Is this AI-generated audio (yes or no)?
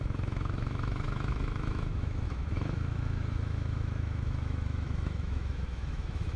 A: yes